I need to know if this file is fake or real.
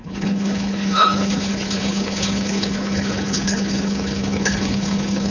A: fake